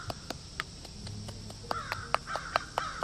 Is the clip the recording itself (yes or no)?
yes